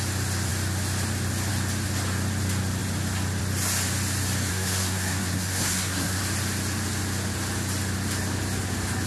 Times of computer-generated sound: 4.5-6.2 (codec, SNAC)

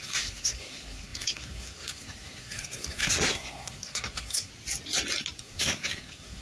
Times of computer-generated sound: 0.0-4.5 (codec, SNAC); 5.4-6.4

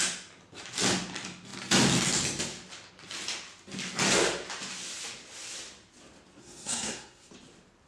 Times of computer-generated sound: 6.4-7.3 (codec, SNAC)